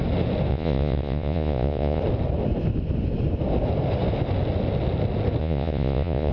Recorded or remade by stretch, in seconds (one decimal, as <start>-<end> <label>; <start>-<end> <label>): 0.0-0.5 recorded; 0.5-2.0 remade; 2.0-5.4 recorded; 5.4-6.3 remade